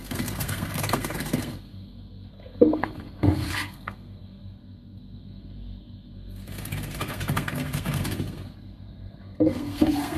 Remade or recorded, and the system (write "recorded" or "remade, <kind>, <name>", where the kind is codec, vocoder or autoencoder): remade, codec, SNAC